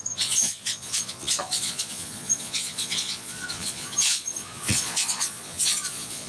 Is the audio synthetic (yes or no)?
yes